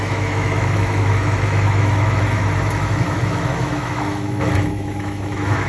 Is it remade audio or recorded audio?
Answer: remade